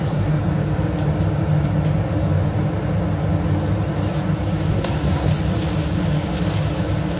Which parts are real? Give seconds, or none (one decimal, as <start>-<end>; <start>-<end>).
0.4-4.7; 5.3-7.2

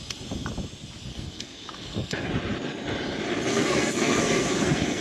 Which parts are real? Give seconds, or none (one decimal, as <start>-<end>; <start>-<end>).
0.0-1.1; 2.3-3.5

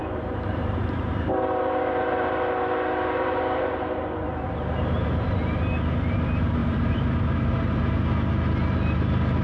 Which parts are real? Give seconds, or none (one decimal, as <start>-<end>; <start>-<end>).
5.3-6.6; 7.3-9.4

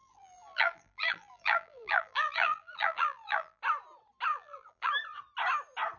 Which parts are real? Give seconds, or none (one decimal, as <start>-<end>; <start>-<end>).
3.6-4.3; 4.9-6.0